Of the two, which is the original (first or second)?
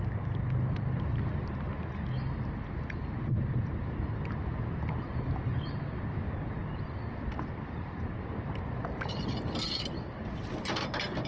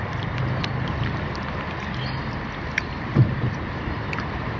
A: first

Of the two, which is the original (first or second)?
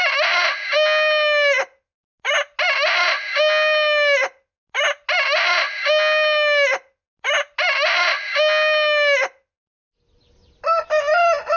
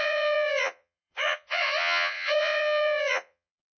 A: first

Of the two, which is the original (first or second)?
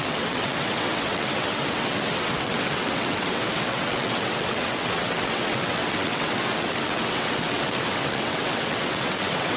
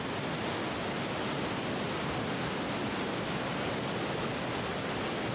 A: second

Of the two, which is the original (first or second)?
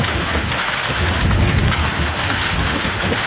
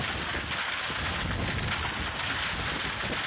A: second